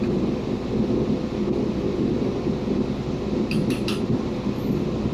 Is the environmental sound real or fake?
real